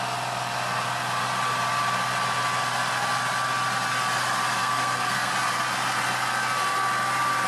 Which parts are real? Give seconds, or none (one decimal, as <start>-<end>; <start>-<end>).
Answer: 0.0-4.6; 5.3-7.5